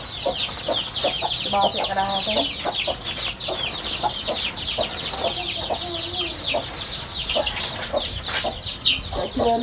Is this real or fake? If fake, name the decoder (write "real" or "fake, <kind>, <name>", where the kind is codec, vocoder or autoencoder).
real